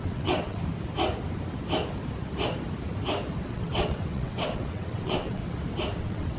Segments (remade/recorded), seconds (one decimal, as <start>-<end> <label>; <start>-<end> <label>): 0.0-0.6 remade; 0.6-3.4 recorded; 3.4-5.4 remade; 5.4-6.0 recorded; 6.0-6.4 remade